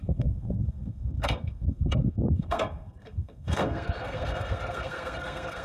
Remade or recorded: remade